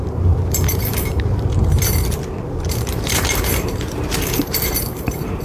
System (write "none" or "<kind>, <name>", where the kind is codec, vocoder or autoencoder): vocoder, BigVGAN v2